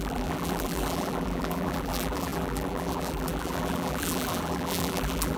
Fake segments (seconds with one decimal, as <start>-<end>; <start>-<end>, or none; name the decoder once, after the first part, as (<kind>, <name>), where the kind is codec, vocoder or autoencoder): 0.0-5.4 (vocoder, BigVGAN v2)